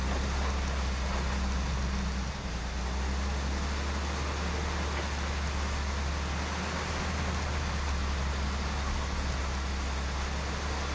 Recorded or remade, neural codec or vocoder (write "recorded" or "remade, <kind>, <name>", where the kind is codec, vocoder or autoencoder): recorded